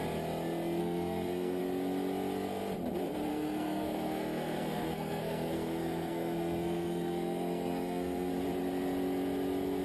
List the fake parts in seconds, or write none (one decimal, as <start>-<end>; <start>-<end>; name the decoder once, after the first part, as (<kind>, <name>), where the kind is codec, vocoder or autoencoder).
0.8-1.6 (codec, SNAC); 3.3-8.3